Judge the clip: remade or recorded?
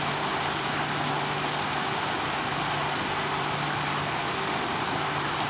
recorded